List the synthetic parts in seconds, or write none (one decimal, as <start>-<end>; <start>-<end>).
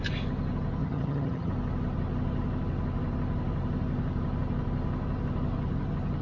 0.8-1.5